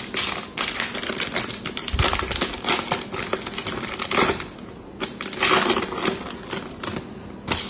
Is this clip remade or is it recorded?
recorded